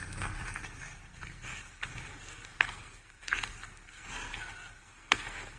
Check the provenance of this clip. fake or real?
fake